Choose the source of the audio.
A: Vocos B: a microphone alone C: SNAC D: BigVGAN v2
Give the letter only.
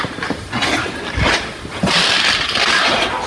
D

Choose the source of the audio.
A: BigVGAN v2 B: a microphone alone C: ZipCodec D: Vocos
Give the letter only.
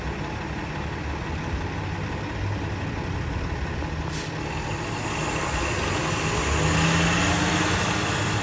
B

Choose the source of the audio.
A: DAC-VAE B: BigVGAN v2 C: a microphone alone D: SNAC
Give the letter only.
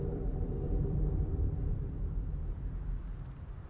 B